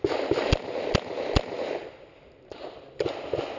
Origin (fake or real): real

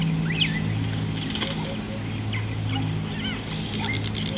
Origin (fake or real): real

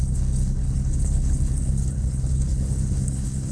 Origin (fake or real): fake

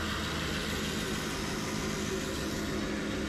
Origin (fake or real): real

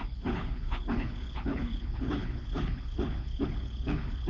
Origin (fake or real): fake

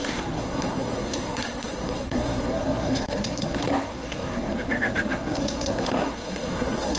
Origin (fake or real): fake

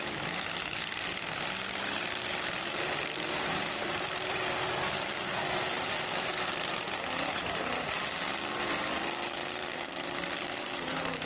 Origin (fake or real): real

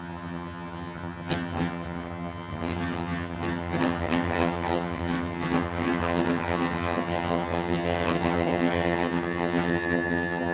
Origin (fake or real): fake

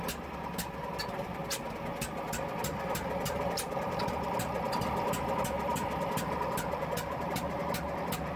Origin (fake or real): real